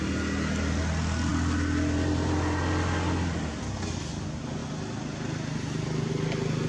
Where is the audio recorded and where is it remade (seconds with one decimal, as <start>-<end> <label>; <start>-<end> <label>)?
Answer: 0.0-6.7 recorded